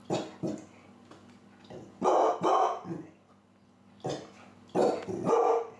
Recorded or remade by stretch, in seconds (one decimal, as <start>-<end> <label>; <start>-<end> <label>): 0.0-0.8 remade; 0.8-5.8 recorded